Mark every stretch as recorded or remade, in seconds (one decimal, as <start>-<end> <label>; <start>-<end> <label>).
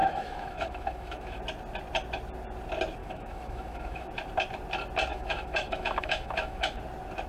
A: 0.0-1.4 remade; 1.4-3.0 recorded; 3.0-4.1 remade; 4.1-5.1 recorded; 5.1-6.8 remade; 6.8-7.3 recorded